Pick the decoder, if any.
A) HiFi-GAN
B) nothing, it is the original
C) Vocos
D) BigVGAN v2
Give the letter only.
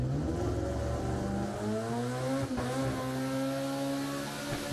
B